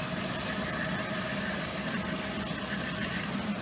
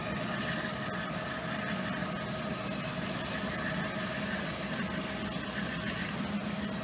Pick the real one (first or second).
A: second